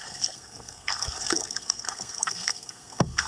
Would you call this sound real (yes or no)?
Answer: no